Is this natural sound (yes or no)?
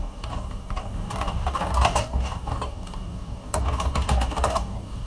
no